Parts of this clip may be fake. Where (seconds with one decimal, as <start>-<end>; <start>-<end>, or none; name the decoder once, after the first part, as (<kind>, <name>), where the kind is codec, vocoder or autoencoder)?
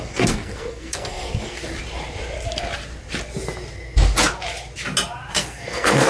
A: 0.0-1.6 (codec, SNAC); 5.3-6.1